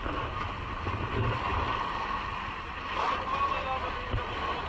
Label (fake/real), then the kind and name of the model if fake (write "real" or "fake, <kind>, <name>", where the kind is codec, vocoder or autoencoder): real